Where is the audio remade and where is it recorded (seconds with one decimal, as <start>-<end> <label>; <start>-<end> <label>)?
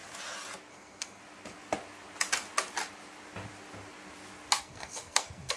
0.0-0.7 recorded; 0.7-1.2 remade; 1.2-4.6 recorded; 4.6-5.6 remade